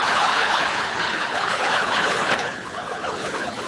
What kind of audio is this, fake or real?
fake